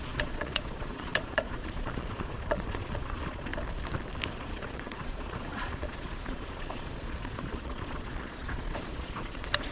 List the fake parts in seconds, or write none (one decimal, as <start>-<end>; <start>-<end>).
0.0-3.5; 4.3-9.7